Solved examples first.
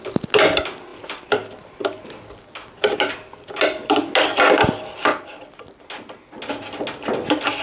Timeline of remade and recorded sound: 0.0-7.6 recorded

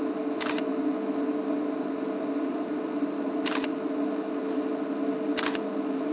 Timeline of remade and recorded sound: 0.0-6.1 recorded

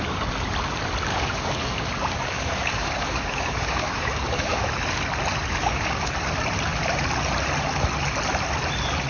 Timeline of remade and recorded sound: 0.0-1.1 recorded; 1.1-4.7 remade; 4.7-5.6 recorded; 5.6-6.2 remade; 6.2-9.1 recorded

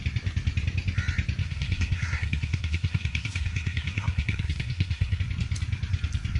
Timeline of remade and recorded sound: 0.0-1.4 recorded; 1.4-5.2 remade; 5.2-6.4 recorded

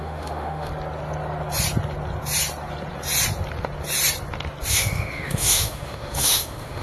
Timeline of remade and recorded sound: 0.0-0.7 remade; 0.7-4.7 recorded; 4.7-6.8 remade

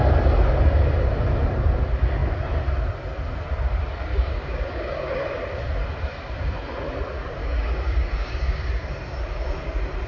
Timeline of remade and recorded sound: 0.0-4.1 recorded; 4.1-5.2 remade; 5.2-7.4 recorded; 7.4-8.9 remade; 8.9-10.1 recorded